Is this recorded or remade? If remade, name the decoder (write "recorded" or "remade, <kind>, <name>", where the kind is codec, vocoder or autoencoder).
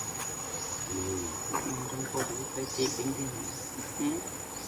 recorded